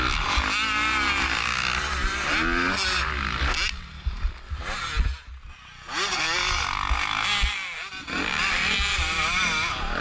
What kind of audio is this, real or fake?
real